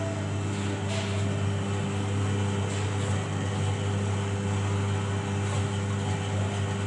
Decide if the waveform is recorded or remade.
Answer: recorded